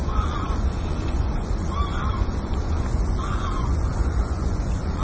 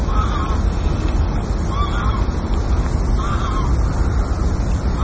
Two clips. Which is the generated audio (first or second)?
first